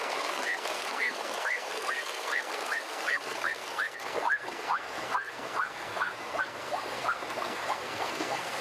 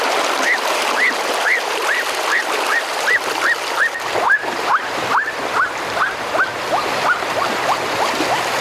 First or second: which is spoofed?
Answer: first